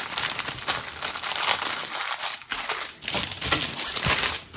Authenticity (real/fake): real